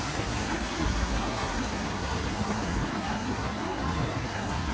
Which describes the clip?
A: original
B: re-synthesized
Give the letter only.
B